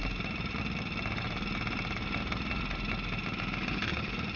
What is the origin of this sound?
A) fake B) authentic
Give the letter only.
B